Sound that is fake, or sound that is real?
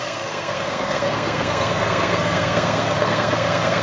fake